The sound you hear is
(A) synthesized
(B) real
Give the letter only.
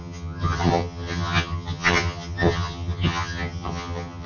A